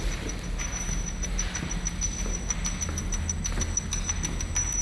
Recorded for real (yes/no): yes